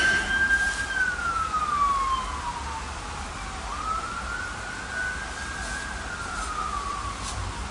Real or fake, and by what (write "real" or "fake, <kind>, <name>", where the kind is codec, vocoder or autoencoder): real